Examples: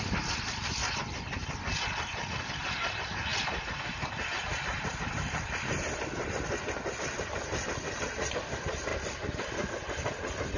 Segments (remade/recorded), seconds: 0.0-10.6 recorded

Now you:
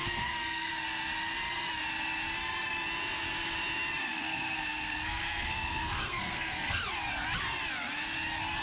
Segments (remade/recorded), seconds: 0.0-0.7 remade; 0.7-4.0 recorded; 4.0-6.8 remade; 6.8-8.6 recorded

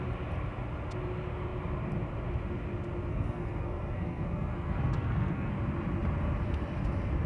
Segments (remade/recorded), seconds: 0.0-3.1 recorded; 3.1-5.5 remade; 5.5-7.3 recorded

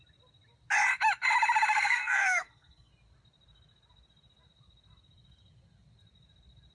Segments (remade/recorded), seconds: 0.0-1.7 recorded; 1.7-2.9 remade; 2.9-6.7 recorded

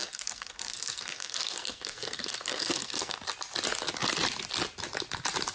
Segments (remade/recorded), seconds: 0.0-3.2 remade; 3.2-5.5 recorded

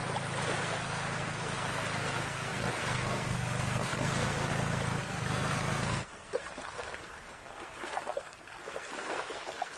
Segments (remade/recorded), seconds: 0.0-0.6 recorded; 0.6-9.8 remade

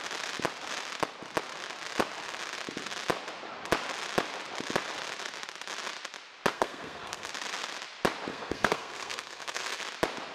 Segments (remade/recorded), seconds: 0.0-6.5 recorded; 6.5-7.3 remade; 7.3-8.3 recorded; 8.3-9.8 remade; 9.8-10.3 recorded